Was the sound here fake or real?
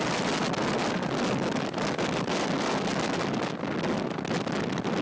real